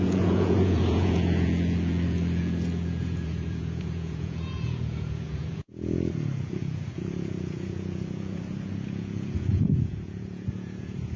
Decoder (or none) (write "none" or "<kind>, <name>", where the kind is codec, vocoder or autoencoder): vocoder, Vocos